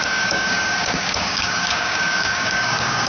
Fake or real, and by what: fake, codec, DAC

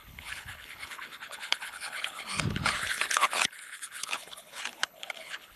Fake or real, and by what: fake, codec, HILCodec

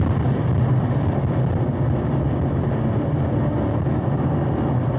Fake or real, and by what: real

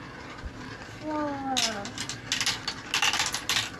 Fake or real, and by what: real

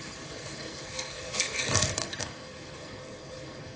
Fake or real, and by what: fake, codec, SNAC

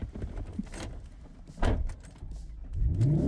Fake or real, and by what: real